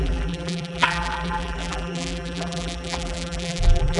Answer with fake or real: fake